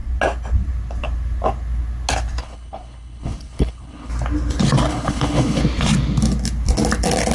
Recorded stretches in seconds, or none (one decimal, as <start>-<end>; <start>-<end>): 0.0-2.4; 4.1-4.9; 5.6-7.3